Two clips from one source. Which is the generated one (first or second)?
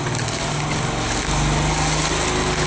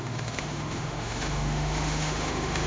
second